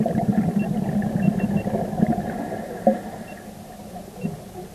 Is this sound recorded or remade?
recorded